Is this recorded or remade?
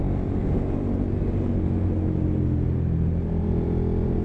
recorded